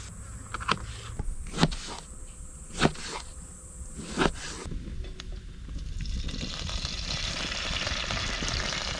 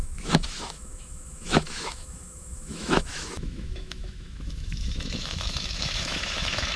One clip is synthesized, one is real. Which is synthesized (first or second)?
second